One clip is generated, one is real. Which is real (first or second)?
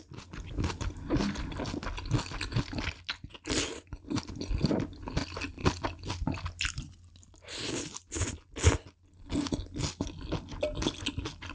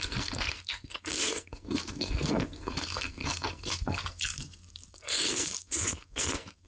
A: first